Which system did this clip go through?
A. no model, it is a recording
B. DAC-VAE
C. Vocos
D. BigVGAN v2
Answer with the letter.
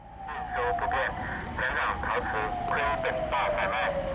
A